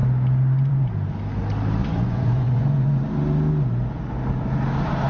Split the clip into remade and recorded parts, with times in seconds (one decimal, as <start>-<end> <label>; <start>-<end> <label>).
0.0-1.8 recorded; 1.8-3.1 remade; 3.1-5.1 recorded